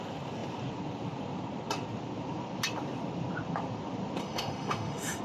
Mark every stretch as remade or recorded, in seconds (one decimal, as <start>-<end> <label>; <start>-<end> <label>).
0.0-4.2 recorded; 4.2-5.2 remade